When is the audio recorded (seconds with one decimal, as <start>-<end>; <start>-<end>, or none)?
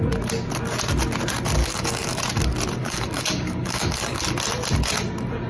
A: 0.0-1.6; 2.2-2.8; 4.2-5.5